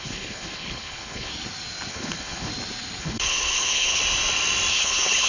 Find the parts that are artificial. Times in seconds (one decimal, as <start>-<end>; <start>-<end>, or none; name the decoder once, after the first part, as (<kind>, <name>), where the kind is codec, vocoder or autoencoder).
0.0-1.3 (codec, HILCodec); 1.9-2.5; 3.0-4.0; 4.7-5.3